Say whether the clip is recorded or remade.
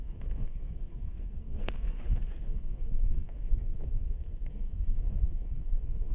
remade